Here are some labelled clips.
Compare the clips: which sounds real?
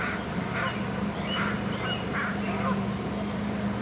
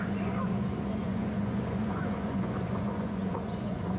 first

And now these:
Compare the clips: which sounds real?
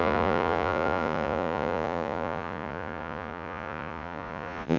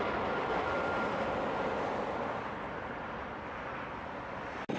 second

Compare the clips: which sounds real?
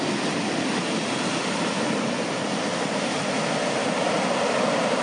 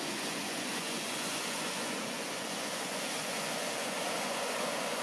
first